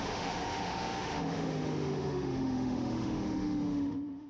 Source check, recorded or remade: remade